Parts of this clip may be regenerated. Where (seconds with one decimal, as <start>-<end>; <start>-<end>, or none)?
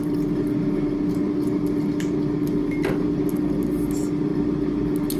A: none